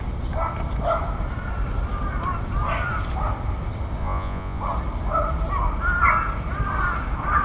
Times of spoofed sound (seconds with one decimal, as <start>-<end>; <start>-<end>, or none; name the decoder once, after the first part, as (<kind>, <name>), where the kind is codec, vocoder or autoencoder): 4.0-4.6 (vocoder, Vocos)

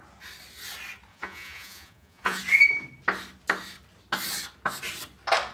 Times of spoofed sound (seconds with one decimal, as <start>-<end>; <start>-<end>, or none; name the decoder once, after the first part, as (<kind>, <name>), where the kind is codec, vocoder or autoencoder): 1.1-2.4 (vocoder, Vocos)

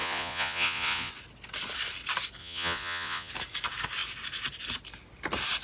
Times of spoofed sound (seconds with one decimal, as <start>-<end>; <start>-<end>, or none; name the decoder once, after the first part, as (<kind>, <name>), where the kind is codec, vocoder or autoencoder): 0.0-1.1 (vocoder, Vocos); 2.4-3.3

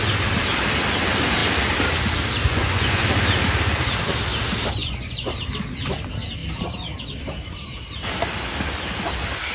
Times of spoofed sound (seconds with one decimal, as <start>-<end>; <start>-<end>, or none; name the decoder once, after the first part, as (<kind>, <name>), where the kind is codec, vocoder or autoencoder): 2.4-3.0 (vocoder, Vocos); 4.8-5.4

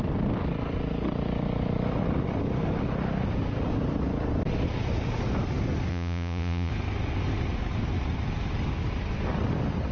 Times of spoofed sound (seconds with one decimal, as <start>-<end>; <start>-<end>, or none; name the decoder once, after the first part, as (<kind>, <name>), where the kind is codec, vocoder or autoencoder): 5.9-6.7 (vocoder, Vocos)

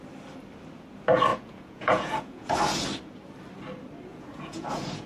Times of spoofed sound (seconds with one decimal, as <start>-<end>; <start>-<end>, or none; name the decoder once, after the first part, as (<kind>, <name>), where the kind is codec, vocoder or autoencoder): 1.3-2.5 (vocoder, Vocos); 4.1-5.1

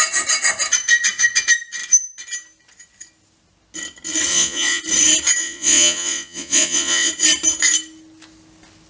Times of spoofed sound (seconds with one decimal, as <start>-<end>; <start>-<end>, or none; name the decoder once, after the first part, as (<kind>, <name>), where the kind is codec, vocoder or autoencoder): 4.3-4.8 (vocoder, Vocos); 5.4-7.1